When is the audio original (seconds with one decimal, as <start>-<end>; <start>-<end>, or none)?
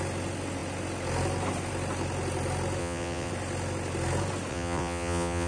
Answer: 0.0-2.8; 3.3-4.5